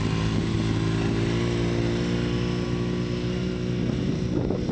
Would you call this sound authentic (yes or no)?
yes